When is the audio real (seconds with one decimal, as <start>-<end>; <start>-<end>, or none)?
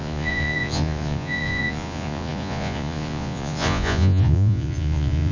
none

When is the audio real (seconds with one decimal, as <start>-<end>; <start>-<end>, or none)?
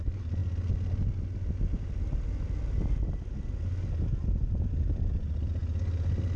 0.0-6.4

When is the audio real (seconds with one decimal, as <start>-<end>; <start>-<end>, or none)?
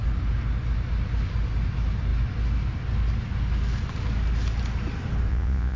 0.0-5.3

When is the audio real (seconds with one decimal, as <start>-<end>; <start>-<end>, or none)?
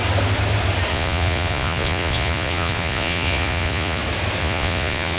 0.0-0.9; 4.0-4.4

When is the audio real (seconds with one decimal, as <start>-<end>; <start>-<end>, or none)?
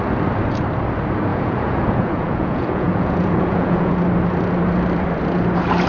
0.0-1.3; 3.9-5.9